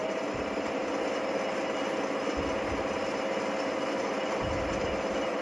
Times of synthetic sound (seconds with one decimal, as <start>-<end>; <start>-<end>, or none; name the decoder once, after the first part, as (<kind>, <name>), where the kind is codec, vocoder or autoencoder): 0.0-0.8 (vocoder, BigVGAN v2); 4.0-5.4